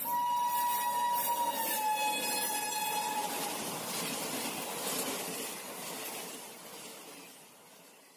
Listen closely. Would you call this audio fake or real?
real